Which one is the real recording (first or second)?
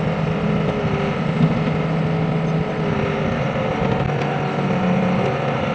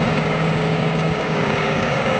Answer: first